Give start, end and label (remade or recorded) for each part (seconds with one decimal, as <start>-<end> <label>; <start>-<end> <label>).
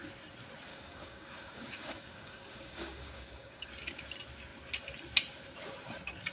0.0-0.7 recorded; 0.7-3.7 remade; 3.7-6.3 recorded